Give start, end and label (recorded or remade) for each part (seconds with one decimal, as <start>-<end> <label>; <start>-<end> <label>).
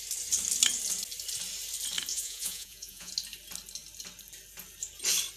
0.0-2.1 recorded; 2.1-3.1 remade; 3.1-5.4 recorded